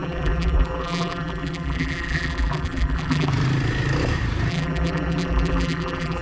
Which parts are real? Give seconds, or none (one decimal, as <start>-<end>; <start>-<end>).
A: 3.3-4.5